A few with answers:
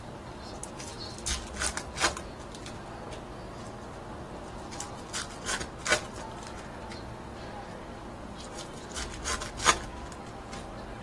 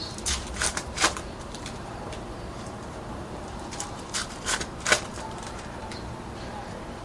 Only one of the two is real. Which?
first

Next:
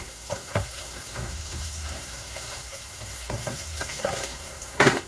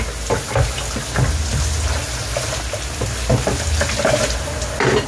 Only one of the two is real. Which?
second